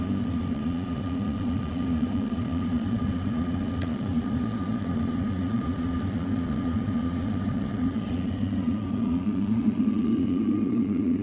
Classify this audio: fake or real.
fake